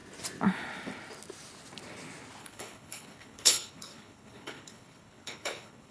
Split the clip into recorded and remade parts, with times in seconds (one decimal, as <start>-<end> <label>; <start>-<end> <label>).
0.0-2.4 recorded; 2.4-5.9 remade